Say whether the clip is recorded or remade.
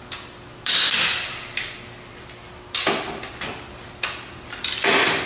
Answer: recorded